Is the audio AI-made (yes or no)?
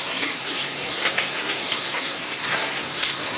yes